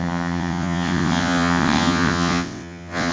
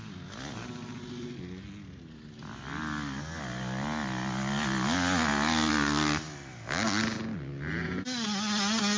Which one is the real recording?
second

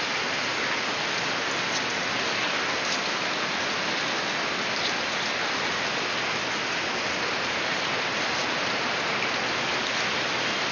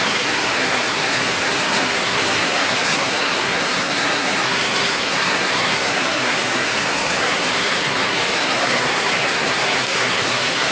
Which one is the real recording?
first